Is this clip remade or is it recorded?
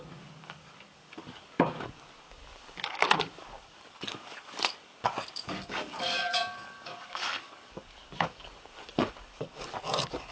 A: remade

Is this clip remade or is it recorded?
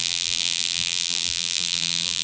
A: remade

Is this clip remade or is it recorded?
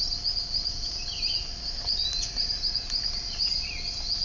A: recorded